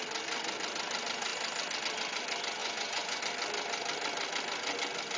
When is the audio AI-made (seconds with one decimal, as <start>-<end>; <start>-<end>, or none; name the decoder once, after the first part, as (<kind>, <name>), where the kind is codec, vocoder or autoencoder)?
2.6-3.2 (vocoder, Vocos)